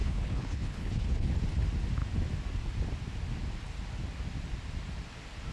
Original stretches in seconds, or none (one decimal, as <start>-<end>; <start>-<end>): 1.3-5.5